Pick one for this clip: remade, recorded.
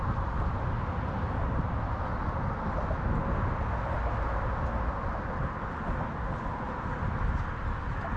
recorded